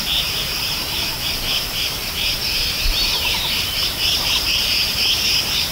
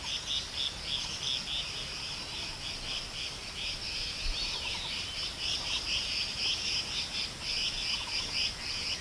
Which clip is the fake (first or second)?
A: first